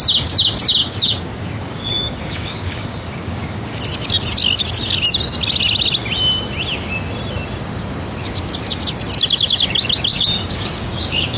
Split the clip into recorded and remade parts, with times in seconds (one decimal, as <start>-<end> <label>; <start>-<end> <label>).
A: 0.0-0.8 recorded; 0.8-3.8 remade; 3.8-10.1 recorded; 10.1-11.4 remade